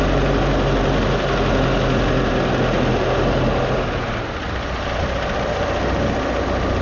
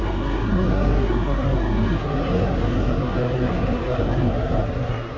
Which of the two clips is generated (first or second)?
second